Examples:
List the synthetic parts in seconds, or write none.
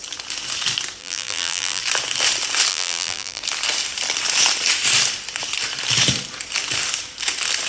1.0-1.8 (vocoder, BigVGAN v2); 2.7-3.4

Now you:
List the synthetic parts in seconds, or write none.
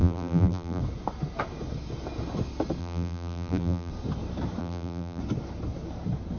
0.0-0.8 (vocoder, BigVGAN v2); 2.8-3.9; 4.6-5.2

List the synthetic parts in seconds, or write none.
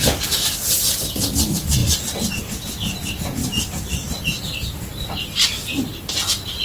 3.4-4.4 (vocoder, BigVGAN v2)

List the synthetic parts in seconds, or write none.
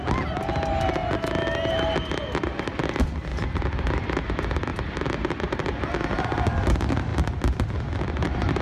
3.3-3.9 (vocoder, BigVGAN v2); 4.7-6.4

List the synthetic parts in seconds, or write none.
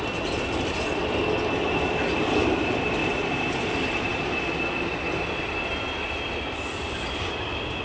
3.0-4.2 (vocoder, BigVGAN v2)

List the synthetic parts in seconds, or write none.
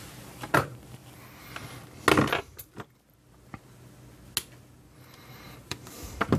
0.0-1.0 (vocoder, BigVGAN v2); 4.8-6.4